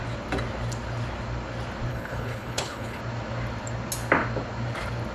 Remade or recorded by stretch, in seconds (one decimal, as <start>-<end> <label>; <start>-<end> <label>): 0.0-1.9 recorded; 1.9-3.0 remade; 3.0-5.1 recorded